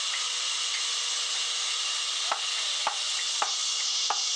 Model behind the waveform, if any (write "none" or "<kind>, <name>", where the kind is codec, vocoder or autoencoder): none